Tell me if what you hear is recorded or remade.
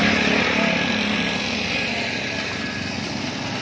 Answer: recorded